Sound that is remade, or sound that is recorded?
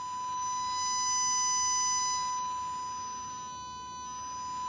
recorded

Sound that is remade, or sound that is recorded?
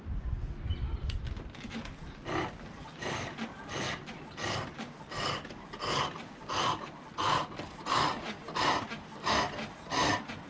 recorded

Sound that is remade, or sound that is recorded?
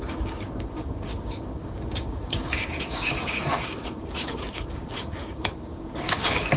remade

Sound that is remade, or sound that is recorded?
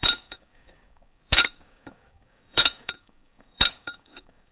remade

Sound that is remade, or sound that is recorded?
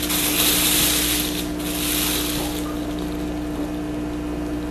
recorded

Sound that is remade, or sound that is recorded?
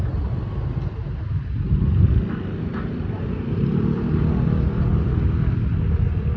recorded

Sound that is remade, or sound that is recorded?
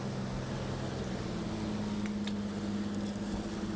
recorded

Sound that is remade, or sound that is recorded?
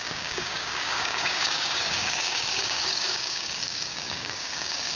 remade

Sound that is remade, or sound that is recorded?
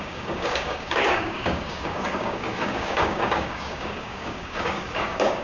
remade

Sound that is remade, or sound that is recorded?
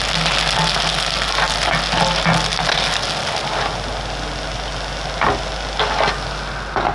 recorded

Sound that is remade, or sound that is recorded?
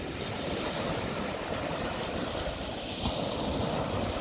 recorded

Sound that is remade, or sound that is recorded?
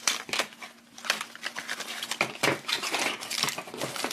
recorded